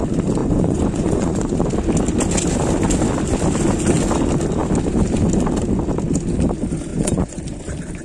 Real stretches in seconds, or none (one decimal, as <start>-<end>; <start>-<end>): 0.0-0.4; 1.7-6.9; 7.4-8.0